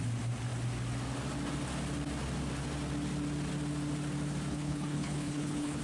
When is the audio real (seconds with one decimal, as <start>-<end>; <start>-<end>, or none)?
0.0-4.5